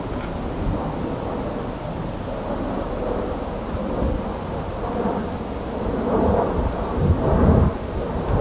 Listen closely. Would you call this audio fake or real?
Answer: real